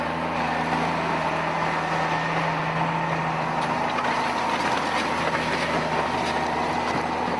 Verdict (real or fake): real